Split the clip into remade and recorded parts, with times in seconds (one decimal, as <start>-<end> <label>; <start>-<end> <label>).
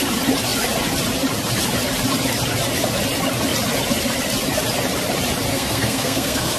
0.0-5.5 recorded; 5.5-6.6 remade